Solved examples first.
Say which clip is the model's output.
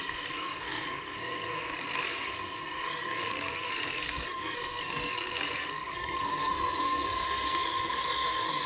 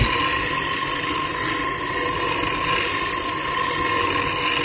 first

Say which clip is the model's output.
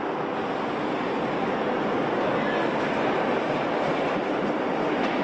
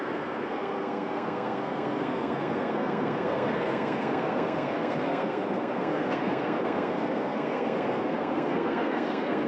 second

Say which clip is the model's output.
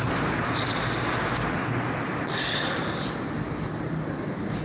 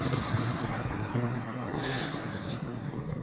second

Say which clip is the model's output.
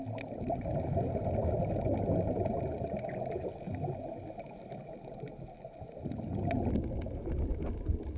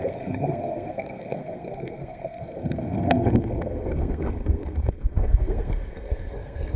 second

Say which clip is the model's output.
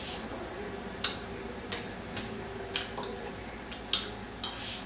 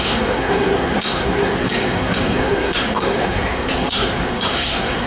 second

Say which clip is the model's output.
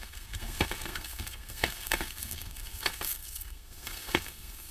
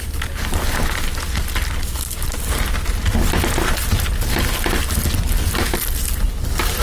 first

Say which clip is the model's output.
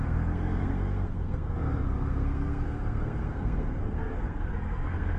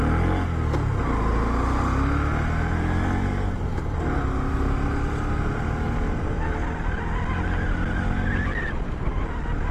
first